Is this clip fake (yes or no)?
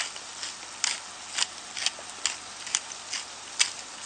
no